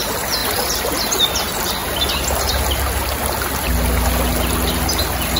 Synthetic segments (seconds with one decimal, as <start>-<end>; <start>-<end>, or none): none